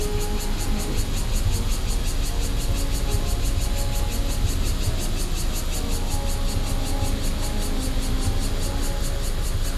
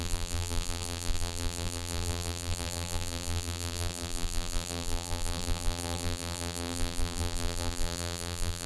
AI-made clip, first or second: second